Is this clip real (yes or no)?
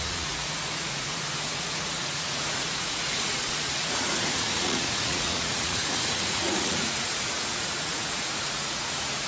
no